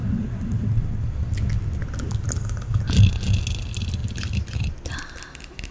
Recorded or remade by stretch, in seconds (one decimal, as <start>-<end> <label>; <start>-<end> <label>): 0.0-4.0 recorded; 4.0-5.2 remade; 5.2-5.7 recorded